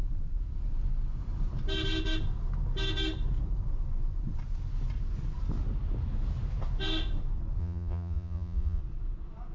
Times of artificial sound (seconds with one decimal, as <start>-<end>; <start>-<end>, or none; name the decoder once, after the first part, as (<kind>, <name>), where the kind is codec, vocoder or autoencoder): 7.6-8.8 (vocoder, Vocos)